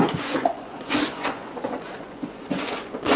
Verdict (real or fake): fake